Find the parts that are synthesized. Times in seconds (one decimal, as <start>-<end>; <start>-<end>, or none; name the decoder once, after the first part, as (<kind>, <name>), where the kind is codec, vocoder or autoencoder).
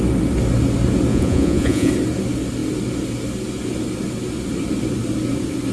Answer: 1.1-1.9 (vocoder, Vocos)